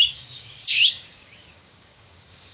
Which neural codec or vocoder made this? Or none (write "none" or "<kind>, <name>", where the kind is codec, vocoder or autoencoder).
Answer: codec, DAC